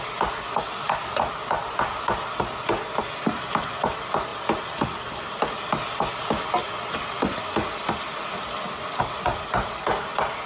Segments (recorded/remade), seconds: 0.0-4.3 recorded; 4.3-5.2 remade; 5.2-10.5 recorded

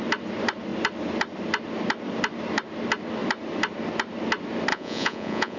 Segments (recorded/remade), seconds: 0.0-4.7 recorded; 4.7-5.6 remade

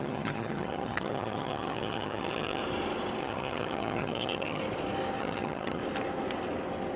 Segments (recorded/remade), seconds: 0.0-2.6 remade; 2.6-3.2 recorded; 3.2-4.6 remade; 4.6-5.2 recorded; 5.2-5.8 remade; 5.8-7.0 recorded

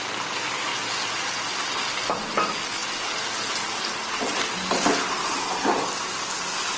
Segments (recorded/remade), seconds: 0.0-6.8 recorded

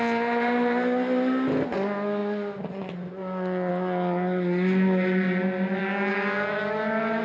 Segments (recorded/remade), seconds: 0.0-5.8 recorded; 5.8-6.6 remade; 6.6-7.2 recorded

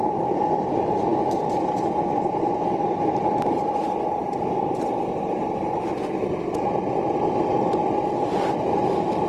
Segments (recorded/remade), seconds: 0.0-9.3 recorded